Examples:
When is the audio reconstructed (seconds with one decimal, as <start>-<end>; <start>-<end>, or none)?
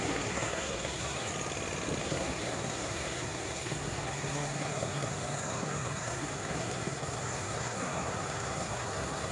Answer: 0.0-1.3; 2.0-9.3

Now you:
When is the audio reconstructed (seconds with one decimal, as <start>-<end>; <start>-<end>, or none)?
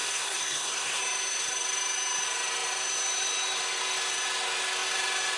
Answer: 0.0-1.0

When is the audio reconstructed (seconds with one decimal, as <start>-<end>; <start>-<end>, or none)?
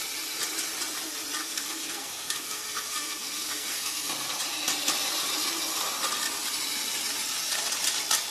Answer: 1.4-4.1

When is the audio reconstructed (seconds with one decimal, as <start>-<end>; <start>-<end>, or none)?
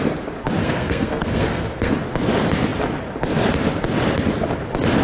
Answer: 0.6-1.9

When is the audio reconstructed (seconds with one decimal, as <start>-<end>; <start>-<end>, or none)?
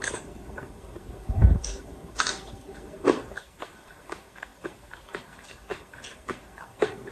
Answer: 0.0-7.1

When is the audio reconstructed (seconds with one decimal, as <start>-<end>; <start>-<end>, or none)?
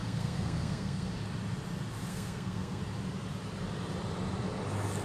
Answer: 0.0-1.1; 2.1-2.8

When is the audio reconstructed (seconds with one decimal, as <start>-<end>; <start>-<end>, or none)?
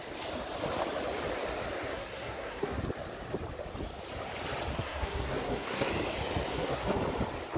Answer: 1.9-2.8; 4.7-5.9; 6.5-7.0